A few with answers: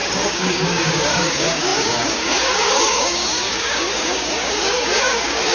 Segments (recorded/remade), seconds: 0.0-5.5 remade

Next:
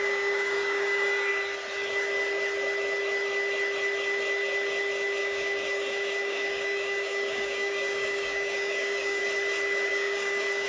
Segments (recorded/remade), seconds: 0.0-1.3 remade; 1.3-5.2 recorded; 5.2-9.2 remade; 9.2-9.9 recorded; 9.9-10.7 remade

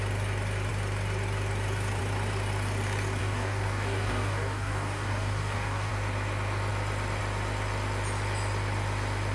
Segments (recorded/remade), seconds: 0.0-3.2 recorded; 3.2-5.9 remade; 5.9-9.3 recorded

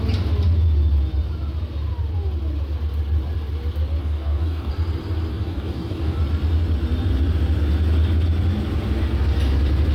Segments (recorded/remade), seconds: 0.0-4.0 recorded; 4.0-4.7 remade; 4.7-5.3 recorded; 5.3-6.2 remade; 6.2-9.9 recorded

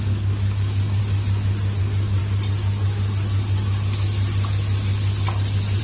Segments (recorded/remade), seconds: 0.0-1.0 remade; 1.0-1.8 recorded; 1.8-2.2 remade; 2.2-5.8 recorded

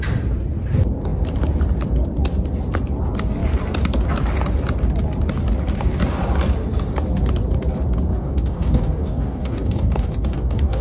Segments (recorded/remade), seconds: 0.0-8.1 recorded; 8.1-10.8 remade

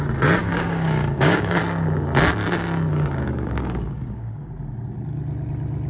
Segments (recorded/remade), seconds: 0.0-0.4 recorded; 0.4-1.6 remade; 1.6-2.9 recorded; 2.9-4.5 remade; 4.5-5.9 recorded

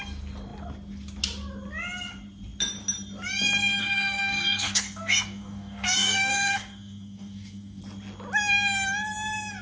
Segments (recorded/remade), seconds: 0.0-3.8 recorded; 3.8-7.8 remade; 7.8-9.6 recorded